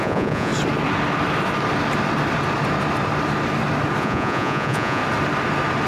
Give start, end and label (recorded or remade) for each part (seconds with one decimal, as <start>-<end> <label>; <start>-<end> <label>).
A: 0.0-0.5 remade; 0.5-4.0 recorded; 4.0-5.0 remade; 5.0-5.9 recorded